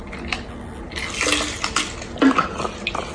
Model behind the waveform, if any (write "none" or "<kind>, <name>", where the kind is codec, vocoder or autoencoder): none